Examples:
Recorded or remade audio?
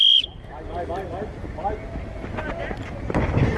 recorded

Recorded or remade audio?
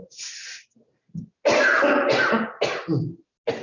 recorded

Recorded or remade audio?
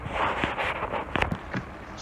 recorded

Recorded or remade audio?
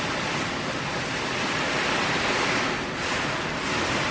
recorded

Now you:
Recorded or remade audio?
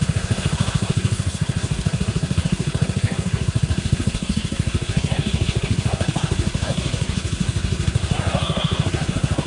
remade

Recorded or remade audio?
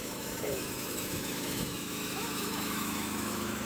remade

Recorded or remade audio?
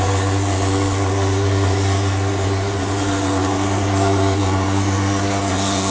recorded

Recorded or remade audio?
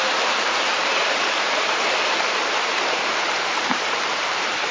remade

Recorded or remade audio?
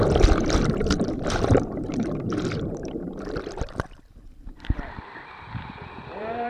remade